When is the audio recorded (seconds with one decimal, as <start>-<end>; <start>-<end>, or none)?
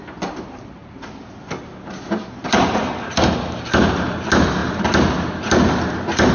0.0-6.3